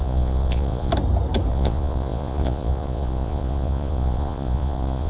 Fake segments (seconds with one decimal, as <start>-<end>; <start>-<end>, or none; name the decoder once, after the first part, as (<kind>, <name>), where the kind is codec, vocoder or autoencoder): 0.0-0.9 (vocoder, Vocos); 1.5-5.1